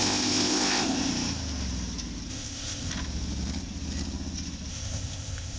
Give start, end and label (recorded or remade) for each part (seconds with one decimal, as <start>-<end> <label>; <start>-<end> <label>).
0.0-1.1 remade; 1.1-2.3 recorded; 2.3-2.9 remade; 2.9-4.7 recorded; 4.7-5.6 remade